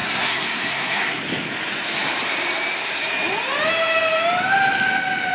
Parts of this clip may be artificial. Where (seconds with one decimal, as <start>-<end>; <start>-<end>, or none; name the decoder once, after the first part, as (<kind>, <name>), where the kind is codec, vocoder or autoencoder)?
0.0-1.2 (codec, SNAC)